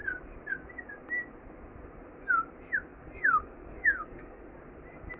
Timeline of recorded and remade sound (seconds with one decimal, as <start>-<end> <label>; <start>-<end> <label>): 0.0-2.9 recorded; 2.9-4.4 remade; 4.4-5.2 recorded